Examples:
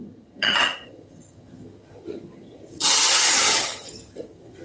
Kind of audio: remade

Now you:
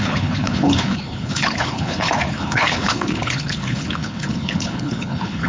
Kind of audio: remade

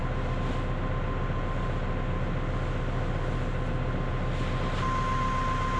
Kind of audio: recorded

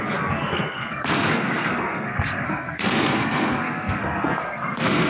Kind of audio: remade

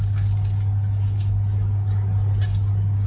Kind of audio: recorded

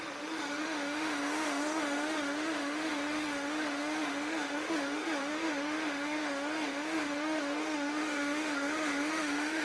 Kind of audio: remade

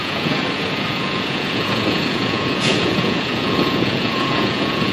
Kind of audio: remade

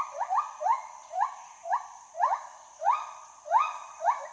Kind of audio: remade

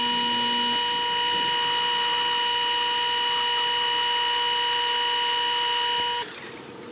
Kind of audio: recorded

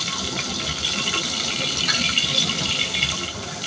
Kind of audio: recorded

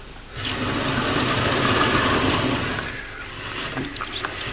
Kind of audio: recorded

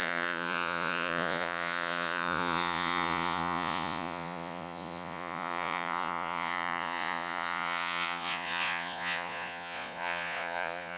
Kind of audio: remade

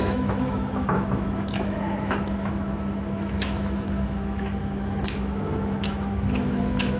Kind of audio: remade